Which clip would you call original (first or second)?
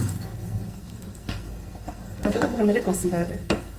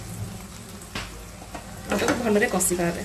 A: second